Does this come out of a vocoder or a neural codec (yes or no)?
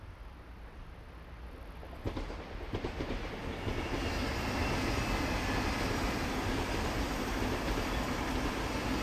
no